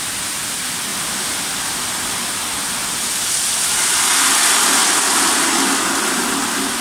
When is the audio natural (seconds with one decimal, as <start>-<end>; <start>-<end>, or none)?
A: 0.0-6.8